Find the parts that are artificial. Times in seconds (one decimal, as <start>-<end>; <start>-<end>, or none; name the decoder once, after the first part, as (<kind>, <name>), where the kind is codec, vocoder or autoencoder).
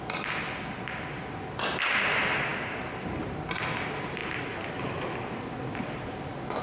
none